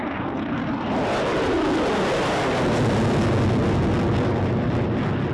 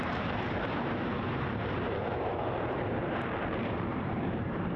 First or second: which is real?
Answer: first